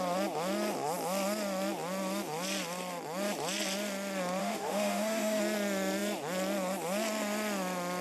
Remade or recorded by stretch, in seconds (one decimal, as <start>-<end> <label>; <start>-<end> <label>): 0.0-4.4 recorded; 4.4-5.4 remade; 5.4-8.0 recorded